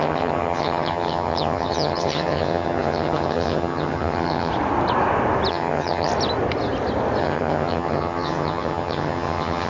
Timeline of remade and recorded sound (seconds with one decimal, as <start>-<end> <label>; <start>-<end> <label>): 0.0-4.5 remade; 4.5-5.5 recorded; 5.5-6.1 remade; 6.1-7.2 recorded; 7.2-9.7 remade